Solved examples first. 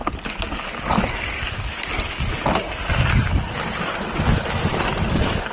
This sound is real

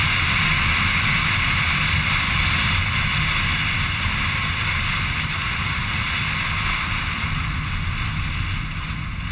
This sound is real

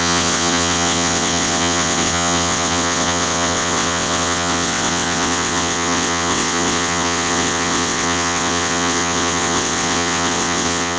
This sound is fake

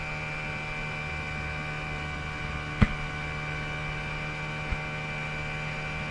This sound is real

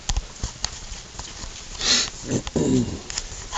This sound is real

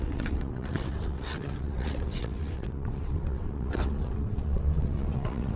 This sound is fake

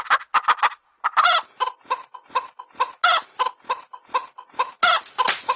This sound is real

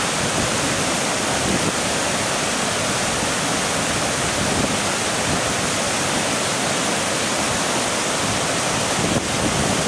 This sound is real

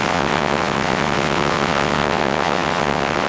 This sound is fake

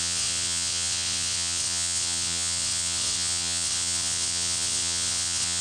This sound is fake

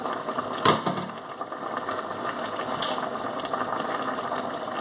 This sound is real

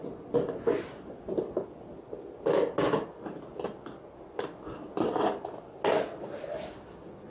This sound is real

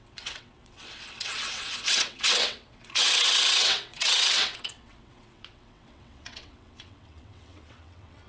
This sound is fake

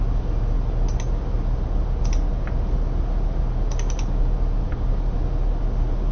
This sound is real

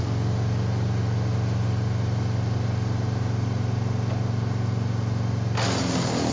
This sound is real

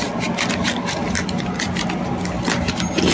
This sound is real